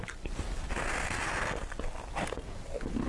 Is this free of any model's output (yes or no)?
yes